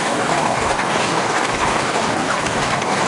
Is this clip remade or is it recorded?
remade